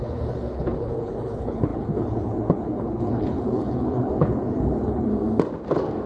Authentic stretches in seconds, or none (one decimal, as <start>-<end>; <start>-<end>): 5.1-6.1